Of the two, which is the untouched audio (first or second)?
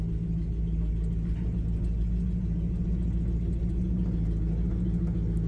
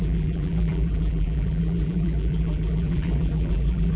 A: first